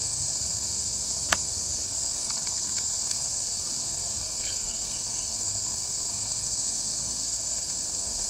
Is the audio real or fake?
fake